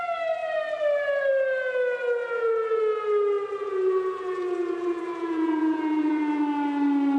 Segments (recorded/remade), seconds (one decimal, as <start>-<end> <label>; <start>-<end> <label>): 0.0-2.2 recorded; 2.2-2.8 remade; 2.8-3.6 recorded; 3.6-6.4 remade; 6.4-7.2 recorded